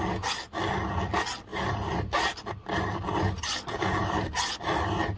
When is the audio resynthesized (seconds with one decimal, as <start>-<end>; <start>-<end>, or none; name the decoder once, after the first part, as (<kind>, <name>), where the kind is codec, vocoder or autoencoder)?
1.5-4.6 (vocoder, BigVGAN v2)